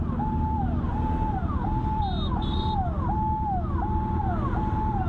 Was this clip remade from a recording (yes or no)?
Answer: no